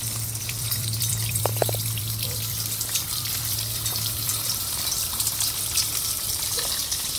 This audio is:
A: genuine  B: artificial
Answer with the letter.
B